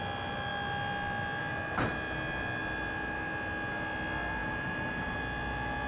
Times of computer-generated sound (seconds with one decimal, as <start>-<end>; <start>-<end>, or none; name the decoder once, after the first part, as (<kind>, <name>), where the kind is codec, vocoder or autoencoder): 4.4-5.2 (vocoder, BigVGAN v2)